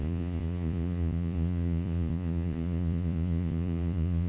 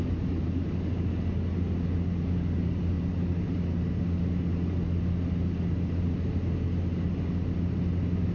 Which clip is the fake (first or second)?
first